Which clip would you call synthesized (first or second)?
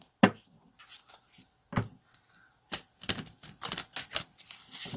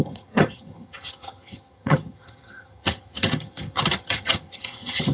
second